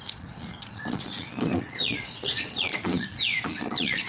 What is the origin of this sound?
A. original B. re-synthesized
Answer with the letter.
B